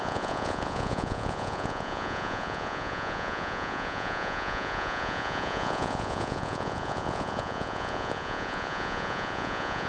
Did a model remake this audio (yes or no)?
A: yes